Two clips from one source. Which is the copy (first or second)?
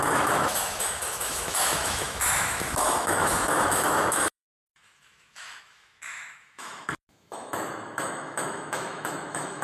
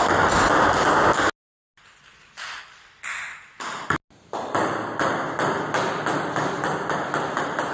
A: first